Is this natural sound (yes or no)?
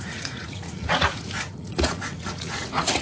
no